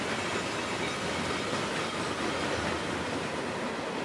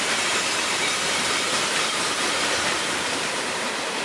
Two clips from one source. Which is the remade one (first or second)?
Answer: second